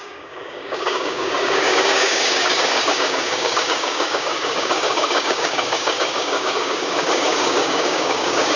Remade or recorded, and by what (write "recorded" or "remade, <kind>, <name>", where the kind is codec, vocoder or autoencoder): remade, codec, DAC